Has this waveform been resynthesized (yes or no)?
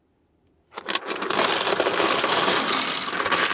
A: no